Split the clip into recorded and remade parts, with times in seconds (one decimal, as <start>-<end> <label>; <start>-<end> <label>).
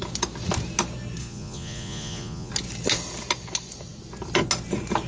0.0-1.2 recorded; 1.2-2.5 remade; 2.5-5.1 recorded